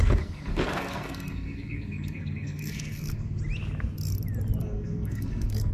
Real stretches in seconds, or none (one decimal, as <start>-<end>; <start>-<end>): 3.4-4.6